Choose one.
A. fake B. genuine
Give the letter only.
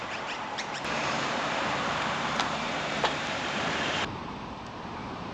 A